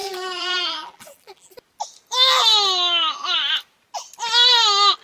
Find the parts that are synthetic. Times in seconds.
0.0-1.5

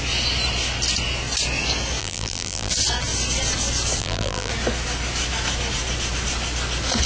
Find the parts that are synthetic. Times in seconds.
2.0-2.7; 4.0-4.5